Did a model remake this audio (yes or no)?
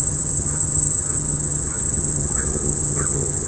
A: yes